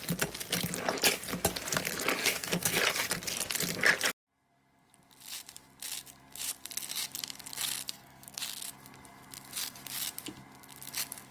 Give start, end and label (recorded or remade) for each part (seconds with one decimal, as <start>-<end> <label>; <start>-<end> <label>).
0.0-2.2 recorded; 2.2-2.8 remade; 2.8-7.8 recorded; 7.8-8.4 remade; 8.4-11.3 recorded